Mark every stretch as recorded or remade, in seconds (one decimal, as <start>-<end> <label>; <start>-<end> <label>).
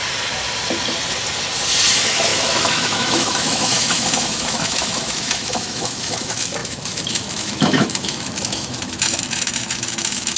0.0-1.9 recorded; 1.9-10.4 remade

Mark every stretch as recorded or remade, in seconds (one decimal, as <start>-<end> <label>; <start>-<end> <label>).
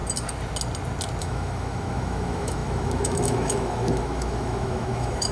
0.0-1.2 recorded; 1.2-5.3 remade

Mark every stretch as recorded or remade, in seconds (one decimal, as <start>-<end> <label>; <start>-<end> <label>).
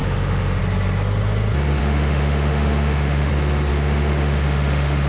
0.0-0.6 remade; 0.6-1.8 recorded; 1.8-3.3 remade; 3.3-3.7 recorded; 3.7-5.1 remade